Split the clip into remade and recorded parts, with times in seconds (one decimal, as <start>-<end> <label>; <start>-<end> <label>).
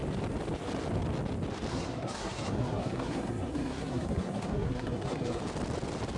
0.0-1.7 recorded; 1.7-5.4 remade; 5.4-6.2 recorded